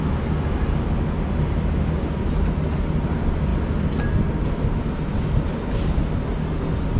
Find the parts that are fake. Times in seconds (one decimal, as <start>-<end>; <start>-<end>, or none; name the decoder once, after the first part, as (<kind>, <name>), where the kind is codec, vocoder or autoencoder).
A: none